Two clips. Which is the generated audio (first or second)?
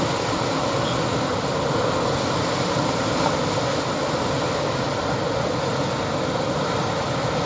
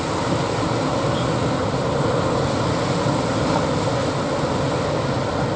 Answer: first